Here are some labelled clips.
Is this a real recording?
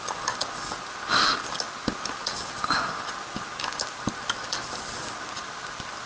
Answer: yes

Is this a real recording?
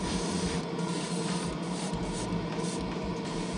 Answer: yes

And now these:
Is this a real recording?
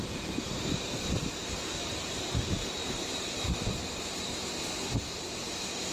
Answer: no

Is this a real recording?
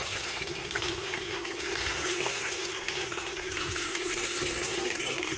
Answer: no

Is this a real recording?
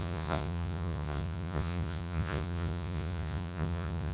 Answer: no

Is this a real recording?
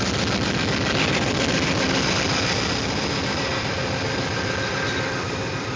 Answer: no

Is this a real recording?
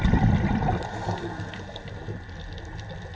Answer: yes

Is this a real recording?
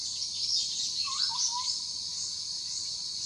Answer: yes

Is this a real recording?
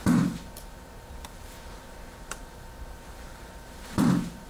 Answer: no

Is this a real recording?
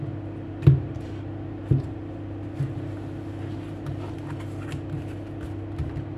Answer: yes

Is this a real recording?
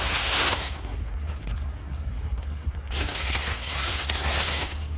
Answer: no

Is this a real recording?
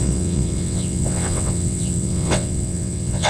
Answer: no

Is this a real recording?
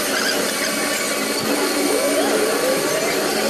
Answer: yes